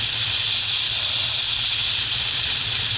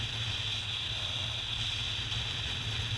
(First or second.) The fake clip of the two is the first